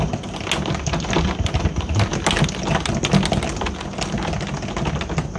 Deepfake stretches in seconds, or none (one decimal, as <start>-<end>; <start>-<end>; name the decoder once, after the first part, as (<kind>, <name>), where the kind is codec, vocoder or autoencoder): none